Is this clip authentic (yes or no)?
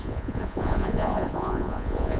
no